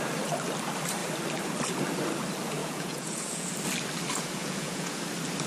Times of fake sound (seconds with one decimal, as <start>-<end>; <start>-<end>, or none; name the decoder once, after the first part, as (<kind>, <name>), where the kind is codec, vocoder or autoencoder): 2.6-3.5 (vocoder, Vocos); 4.4-5.0

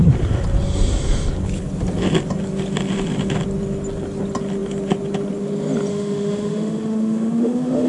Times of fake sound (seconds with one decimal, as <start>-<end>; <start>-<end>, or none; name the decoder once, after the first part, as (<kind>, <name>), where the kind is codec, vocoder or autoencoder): 5.9-7.9 (autoencoder, DAC-VAE)

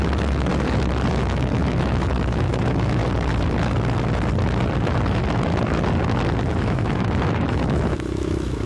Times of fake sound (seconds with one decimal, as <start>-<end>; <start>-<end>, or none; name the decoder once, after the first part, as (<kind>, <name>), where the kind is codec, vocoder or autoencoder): 0.0-0.5 (autoencoder, DAC-VAE); 1.1-3.0; 6.6-8.7